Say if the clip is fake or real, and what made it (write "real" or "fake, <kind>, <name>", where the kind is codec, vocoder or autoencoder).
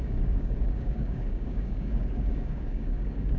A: fake, codec, DAC